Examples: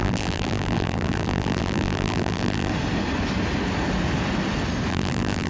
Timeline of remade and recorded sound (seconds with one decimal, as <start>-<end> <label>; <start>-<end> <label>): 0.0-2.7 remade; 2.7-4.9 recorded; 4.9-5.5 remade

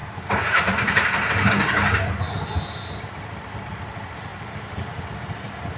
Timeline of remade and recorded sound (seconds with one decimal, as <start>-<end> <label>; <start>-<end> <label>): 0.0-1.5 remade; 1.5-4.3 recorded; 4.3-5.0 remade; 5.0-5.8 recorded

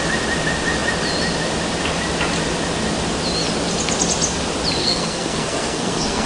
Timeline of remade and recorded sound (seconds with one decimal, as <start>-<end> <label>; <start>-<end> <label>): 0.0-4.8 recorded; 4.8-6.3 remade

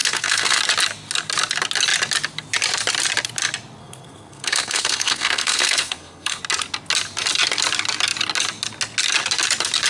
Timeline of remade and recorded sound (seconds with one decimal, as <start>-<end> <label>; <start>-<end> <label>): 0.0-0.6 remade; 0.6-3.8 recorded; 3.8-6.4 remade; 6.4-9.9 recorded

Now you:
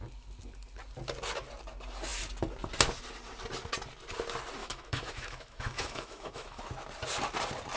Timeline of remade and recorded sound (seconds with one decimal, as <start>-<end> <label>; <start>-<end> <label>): 0.0-4.6 recorded; 4.6-6.6 remade; 6.6-7.8 recorded